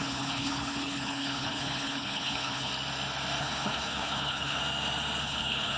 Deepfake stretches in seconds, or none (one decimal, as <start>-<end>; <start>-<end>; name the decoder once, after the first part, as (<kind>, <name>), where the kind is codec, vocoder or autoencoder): 0.0-2.7 (codec, HILCodec); 3.4-4.6; 5.2-5.8